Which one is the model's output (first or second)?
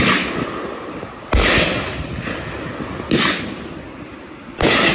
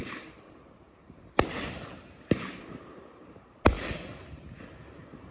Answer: second